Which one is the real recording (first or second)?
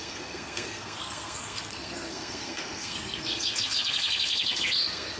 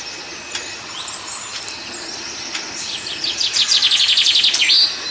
second